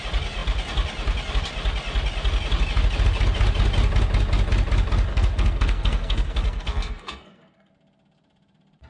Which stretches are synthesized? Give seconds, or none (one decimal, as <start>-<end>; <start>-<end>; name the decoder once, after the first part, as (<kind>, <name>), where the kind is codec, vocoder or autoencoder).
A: 5.1-7.7 (codec, SNAC)